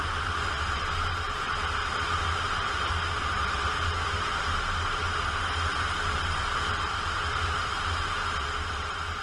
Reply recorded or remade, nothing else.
recorded